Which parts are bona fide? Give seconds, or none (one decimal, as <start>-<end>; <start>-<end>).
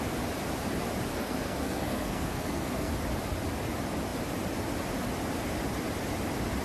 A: 0.0-1.1; 2.9-6.6